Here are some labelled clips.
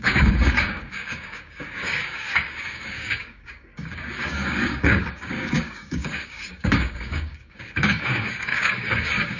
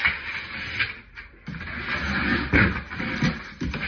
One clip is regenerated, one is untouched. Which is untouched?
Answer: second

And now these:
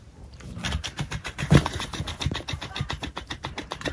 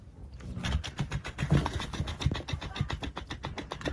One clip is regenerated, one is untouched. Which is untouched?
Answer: second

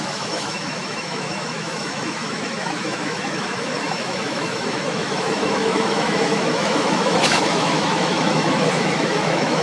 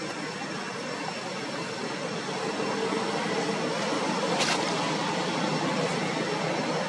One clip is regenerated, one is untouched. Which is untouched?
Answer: second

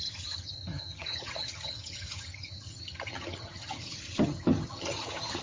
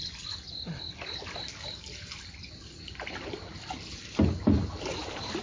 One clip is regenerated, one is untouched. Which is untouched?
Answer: second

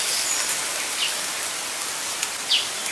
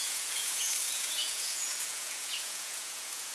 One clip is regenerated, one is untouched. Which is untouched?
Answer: first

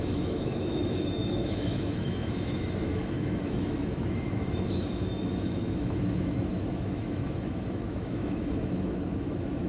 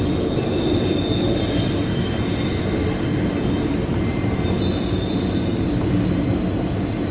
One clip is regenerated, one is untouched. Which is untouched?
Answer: second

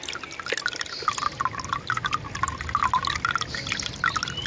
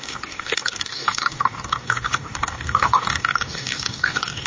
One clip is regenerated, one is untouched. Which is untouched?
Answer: first